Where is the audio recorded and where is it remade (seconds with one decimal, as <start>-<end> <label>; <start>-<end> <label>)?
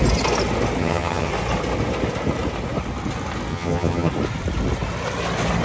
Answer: 0.0-0.8 recorded; 0.8-1.3 remade; 1.3-3.5 recorded; 3.5-4.1 remade; 4.1-5.6 recorded